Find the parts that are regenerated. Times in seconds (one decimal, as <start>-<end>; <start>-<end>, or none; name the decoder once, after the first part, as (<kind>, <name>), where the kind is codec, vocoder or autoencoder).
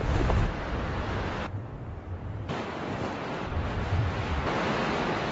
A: none